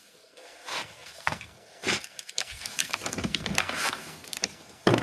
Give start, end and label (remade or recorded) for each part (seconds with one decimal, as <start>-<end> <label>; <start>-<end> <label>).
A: 0.0-5.0 remade